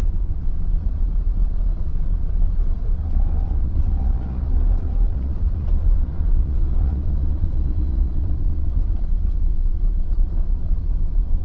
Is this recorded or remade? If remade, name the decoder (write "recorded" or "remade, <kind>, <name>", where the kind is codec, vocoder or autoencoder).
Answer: remade, vocoder, Vocos